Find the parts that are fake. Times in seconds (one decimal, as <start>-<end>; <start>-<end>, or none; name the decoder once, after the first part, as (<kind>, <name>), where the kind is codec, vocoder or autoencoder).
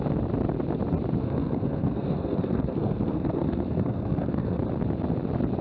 1.2-4.6 (codec, SNAC)